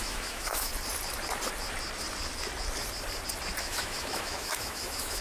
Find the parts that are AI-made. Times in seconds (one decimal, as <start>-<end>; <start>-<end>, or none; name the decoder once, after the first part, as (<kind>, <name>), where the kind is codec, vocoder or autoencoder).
0.0-0.7 (autoencoder, DAC-VAE); 3.6-5.2